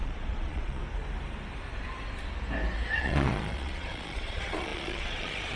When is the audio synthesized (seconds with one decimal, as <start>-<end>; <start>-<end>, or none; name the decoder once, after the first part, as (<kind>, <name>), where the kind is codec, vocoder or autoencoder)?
0.0-0.8 (vocoder, Vocos); 3.0-5.6